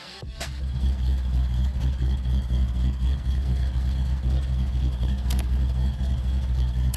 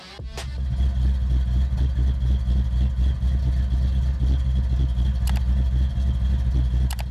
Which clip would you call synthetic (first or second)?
first